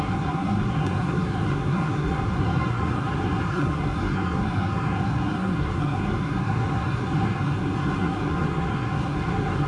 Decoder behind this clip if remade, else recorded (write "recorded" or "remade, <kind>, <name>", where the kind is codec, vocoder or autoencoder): remade, codec, SNAC